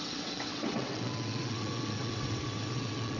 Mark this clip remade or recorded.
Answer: remade